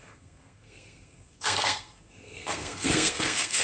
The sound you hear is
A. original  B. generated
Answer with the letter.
B